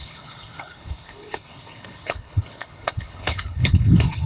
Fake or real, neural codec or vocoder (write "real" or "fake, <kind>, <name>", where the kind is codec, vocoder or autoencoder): fake, codec, HILCodec